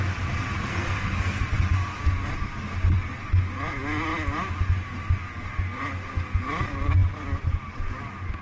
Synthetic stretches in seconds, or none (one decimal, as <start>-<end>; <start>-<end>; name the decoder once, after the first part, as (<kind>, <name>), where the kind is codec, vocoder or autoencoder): 0.7-1.4 (codec, SNAC)